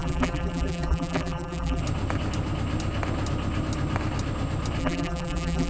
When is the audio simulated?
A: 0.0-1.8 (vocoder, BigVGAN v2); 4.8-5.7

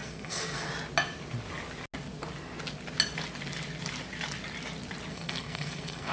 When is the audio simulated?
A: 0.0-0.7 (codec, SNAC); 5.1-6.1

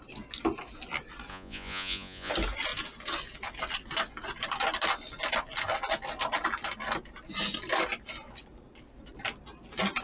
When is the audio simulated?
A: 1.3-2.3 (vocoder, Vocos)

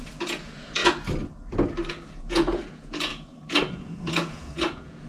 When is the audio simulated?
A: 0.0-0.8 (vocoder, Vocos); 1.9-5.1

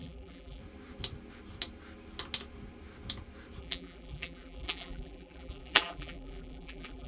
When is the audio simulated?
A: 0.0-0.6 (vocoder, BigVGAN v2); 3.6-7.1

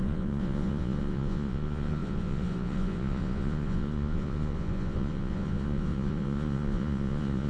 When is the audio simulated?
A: 0.0-7.5 (vocoder, Vocos)